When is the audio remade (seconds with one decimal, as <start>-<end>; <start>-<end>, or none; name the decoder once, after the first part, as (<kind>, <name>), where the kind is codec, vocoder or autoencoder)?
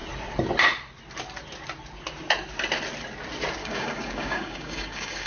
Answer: 3.6-5.3 (codec, DAC)